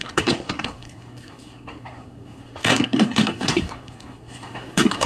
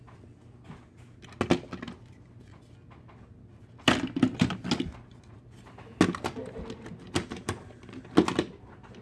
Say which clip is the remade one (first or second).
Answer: first